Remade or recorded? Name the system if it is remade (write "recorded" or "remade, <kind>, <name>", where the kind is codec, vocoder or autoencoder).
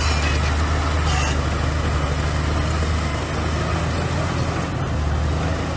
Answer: recorded